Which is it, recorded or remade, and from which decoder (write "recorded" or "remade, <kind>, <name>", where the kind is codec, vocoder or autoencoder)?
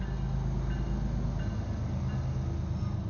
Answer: recorded